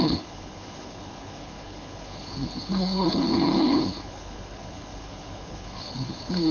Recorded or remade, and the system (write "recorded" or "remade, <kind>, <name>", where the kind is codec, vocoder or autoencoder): remade, codec, HILCodec